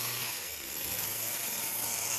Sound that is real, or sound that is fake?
fake